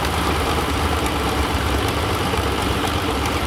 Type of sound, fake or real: fake